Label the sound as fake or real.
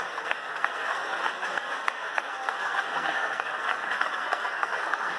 fake